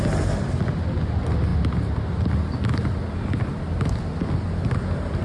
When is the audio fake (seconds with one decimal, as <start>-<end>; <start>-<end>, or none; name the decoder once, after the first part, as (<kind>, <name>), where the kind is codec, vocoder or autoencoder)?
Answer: none